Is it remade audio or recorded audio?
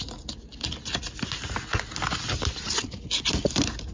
recorded